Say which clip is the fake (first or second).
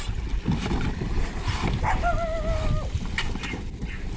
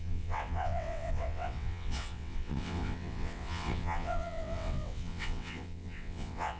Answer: second